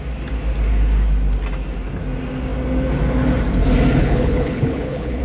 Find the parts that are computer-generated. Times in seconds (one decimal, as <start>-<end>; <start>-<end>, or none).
4.0-5.2